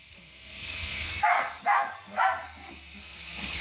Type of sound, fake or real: fake